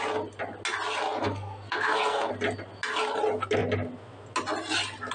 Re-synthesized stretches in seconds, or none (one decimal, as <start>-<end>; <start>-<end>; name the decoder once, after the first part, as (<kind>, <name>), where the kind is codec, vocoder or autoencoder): 1.2-2.3 (codec, SNAC)